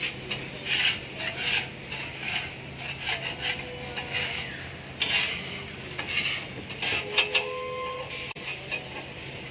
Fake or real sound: real